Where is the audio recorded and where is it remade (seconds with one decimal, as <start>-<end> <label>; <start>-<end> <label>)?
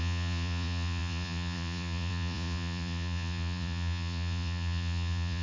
0.0-5.4 remade